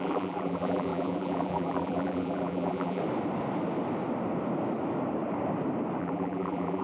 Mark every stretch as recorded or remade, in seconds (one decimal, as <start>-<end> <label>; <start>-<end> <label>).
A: 0.0-3.0 remade; 3.0-6.0 recorded; 6.0-6.8 remade